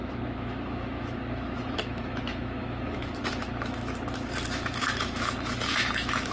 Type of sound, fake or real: fake